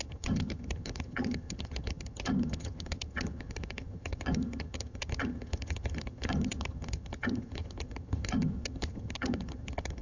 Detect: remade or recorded remade